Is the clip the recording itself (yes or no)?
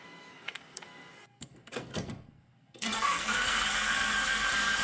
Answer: no